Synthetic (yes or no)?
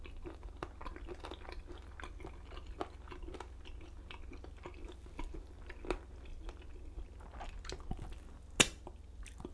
no